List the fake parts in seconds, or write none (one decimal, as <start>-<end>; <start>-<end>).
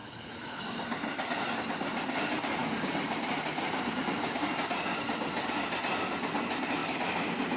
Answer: 0.0-0.6